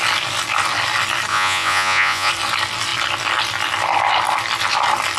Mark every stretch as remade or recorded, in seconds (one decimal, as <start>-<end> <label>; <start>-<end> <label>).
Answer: 0.0-1.3 recorded; 1.3-2.3 remade; 2.3-5.2 recorded